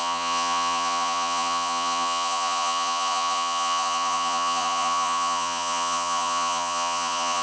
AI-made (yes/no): yes